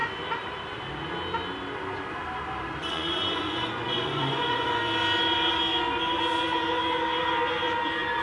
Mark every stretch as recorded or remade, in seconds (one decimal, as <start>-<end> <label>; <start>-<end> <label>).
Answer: 0.0-2.8 recorded; 2.8-4.8 remade; 4.8-8.2 recorded